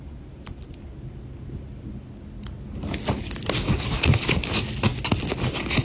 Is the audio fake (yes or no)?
no